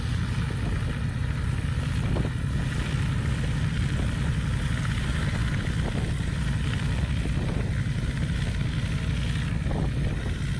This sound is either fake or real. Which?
real